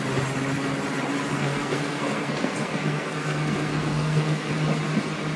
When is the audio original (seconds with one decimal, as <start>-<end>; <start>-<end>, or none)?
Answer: 0.0-1.3; 4.5-5.4